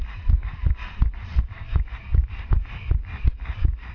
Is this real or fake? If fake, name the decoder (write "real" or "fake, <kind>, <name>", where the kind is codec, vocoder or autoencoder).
real